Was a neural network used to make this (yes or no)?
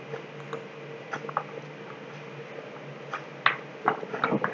no